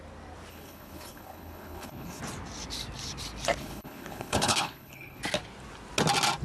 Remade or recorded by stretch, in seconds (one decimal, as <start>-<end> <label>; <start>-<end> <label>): 0.0-0.5 recorded; 0.5-2.2 remade; 2.2-3.6 recorded; 3.6-5.2 remade; 5.2-6.4 recorded